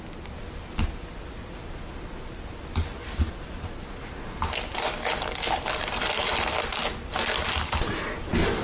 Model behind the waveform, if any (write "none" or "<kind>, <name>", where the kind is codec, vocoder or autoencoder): none